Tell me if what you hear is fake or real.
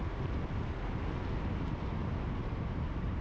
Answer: real